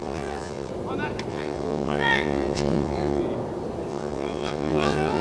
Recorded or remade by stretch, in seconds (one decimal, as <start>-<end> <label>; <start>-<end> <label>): 0.0-0.7 remade; 0.7-1.3 recorded; 1.3-3.2 remade; 3.2-3.9 recorded; 3.9-5.2 remade